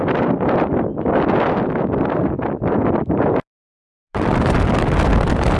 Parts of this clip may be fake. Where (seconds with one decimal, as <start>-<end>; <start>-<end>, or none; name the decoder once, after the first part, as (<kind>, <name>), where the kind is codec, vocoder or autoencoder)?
0.0-0.9 (vocoder, BigVGAN v2); 3.0-5.6